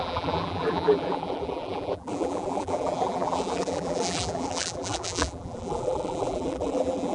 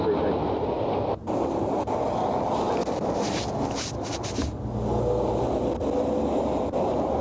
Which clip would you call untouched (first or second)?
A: second